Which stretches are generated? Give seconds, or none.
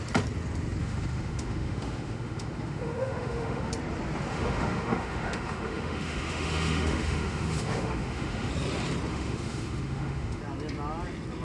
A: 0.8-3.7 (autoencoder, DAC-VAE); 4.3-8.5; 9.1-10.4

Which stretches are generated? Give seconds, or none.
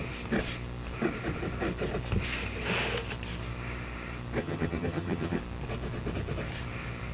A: 4.4-5.4 (vocoder, HiFi-GAN)